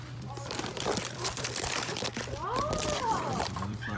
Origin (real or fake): fake